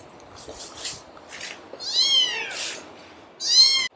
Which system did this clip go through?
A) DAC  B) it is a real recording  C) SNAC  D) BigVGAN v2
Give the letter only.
B